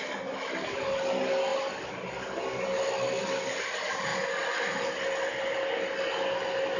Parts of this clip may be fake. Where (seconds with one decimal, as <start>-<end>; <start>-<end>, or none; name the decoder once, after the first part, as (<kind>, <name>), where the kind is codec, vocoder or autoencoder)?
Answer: none